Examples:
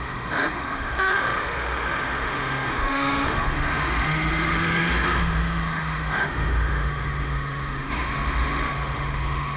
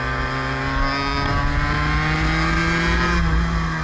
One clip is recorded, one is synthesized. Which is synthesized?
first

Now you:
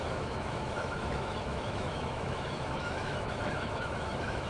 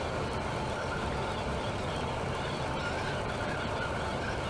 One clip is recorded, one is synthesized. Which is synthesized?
first